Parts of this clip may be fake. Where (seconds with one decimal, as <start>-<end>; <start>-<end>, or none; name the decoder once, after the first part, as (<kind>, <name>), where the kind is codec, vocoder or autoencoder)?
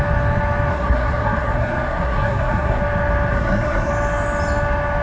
0.7-2.8 (codec, SNAC); 3.3-3.9